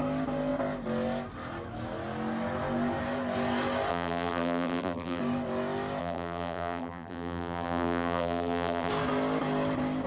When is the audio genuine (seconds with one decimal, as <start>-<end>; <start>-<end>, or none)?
0.0-3.9; 5.2-6.0; 8.9-10.1